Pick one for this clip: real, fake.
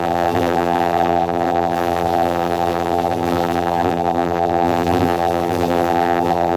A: fake